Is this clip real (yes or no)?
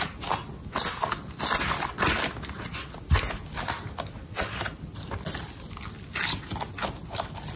yes